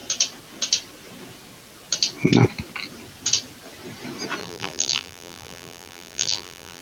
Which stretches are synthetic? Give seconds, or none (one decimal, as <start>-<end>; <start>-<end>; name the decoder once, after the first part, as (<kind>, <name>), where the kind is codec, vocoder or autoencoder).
4.4-6.8 (vocoder, BigVGAN v2)